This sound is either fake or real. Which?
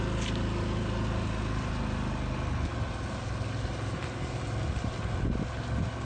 real